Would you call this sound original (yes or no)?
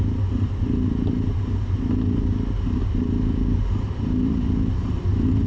yes